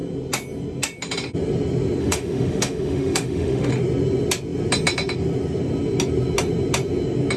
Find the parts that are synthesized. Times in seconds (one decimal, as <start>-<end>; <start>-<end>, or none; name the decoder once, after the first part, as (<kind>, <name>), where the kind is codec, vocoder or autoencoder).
2.0-3.7 (autoencoder, DAC-VAE)